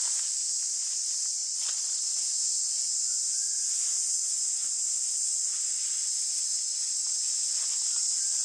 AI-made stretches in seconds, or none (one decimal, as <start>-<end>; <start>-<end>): 1.4-2.0